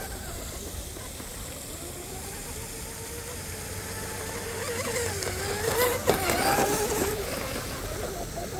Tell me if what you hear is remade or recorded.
recorded